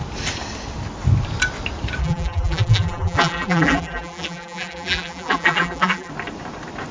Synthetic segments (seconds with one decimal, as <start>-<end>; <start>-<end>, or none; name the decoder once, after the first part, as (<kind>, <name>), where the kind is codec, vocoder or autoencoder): 2.0-6.1 (vocoder, BigVGAN v2)